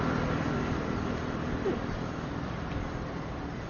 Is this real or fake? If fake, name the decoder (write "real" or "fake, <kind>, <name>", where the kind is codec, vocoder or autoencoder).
real